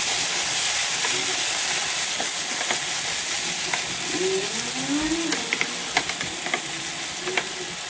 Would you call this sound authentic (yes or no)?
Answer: yes